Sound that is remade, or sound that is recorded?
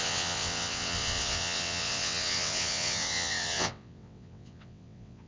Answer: remade